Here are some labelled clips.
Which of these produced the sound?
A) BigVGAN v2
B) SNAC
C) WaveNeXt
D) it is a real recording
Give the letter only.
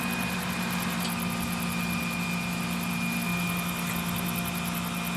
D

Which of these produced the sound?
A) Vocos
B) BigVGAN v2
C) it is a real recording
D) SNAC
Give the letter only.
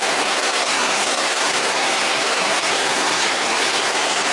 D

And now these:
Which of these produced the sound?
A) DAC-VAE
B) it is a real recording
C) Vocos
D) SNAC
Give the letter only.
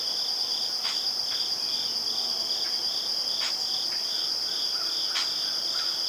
B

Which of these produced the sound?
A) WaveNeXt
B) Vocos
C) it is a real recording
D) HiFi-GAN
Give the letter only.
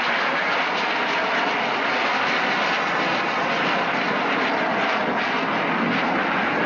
C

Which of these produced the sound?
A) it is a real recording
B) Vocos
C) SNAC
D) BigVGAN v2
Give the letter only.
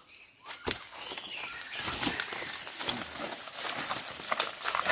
A